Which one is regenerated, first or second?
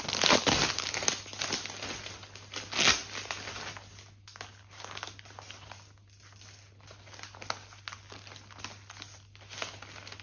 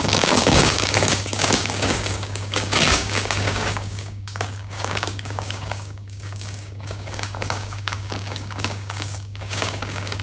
second